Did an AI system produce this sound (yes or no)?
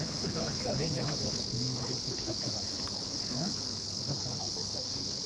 yes